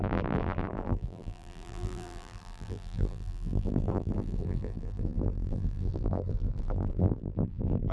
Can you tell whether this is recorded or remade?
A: remade